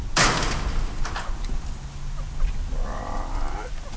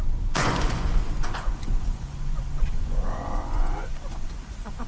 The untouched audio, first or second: first